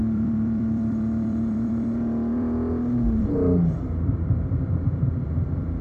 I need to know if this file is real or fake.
fake